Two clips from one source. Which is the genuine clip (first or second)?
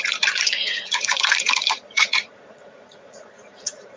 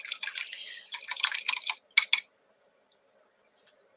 second